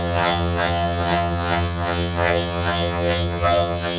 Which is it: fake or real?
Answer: fake